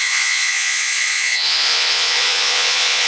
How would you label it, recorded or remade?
remade